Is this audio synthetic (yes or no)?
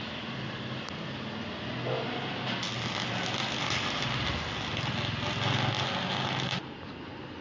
no